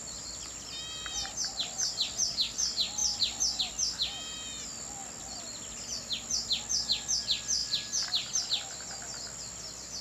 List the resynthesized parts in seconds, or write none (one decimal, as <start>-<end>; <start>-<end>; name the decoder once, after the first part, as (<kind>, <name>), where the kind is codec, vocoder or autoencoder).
none